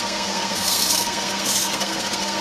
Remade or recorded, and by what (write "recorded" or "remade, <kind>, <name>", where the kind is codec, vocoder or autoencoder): remade, codec, SNAC